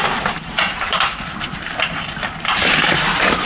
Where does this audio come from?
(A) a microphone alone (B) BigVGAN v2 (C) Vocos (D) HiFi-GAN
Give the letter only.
B